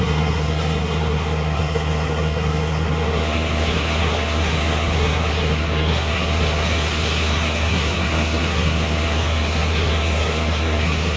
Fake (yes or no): yes